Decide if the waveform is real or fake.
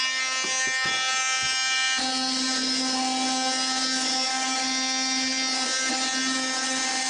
real